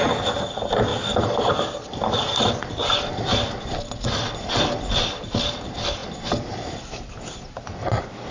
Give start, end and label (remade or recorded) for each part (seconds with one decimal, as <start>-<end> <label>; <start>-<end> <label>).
0.0-8.3 recorded